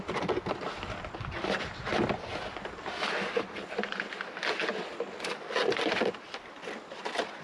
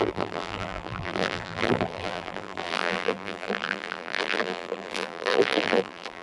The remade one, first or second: second